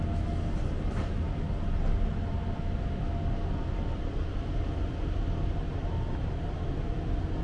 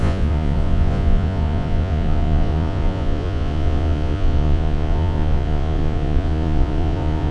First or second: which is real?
first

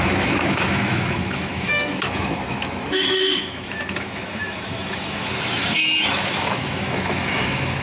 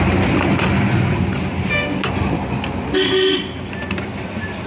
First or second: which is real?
second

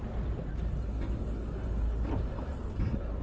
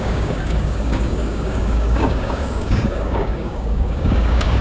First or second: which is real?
first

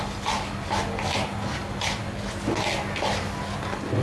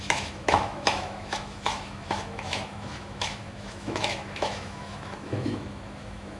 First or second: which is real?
first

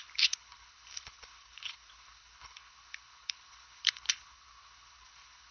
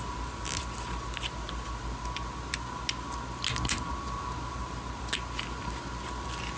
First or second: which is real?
second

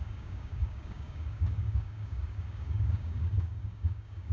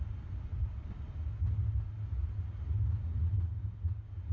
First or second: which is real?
second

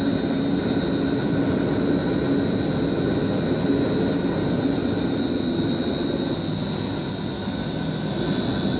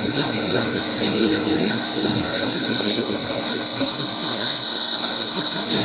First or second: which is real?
first